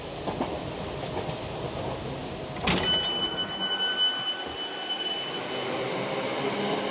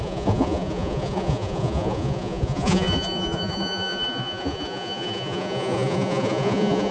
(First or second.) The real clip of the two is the first